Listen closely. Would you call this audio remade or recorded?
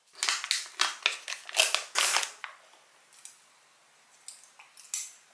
recorded